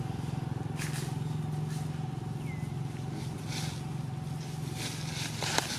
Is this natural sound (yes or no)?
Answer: yes